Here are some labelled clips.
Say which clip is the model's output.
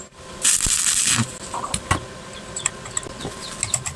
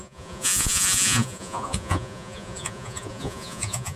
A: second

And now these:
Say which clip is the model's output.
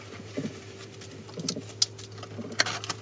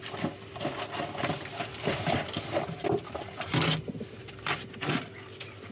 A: second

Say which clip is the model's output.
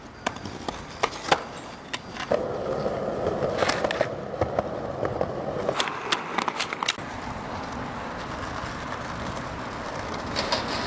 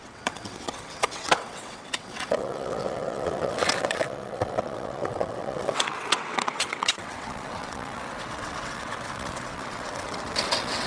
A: second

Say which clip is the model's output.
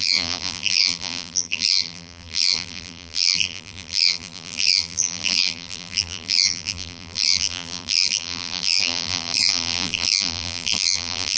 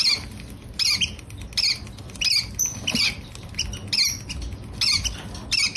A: first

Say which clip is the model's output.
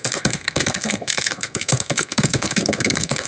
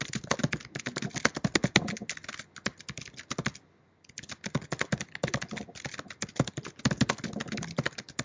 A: first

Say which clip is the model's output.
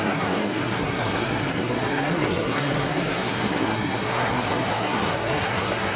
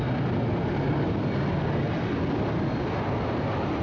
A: first